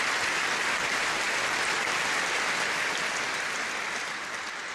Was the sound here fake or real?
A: real